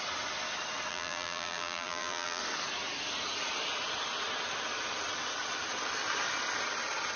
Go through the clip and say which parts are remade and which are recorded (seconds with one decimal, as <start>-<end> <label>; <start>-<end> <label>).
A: 0.0-0.9 recorded; 0.9-2.4 remade; 2.4-7.2 recorded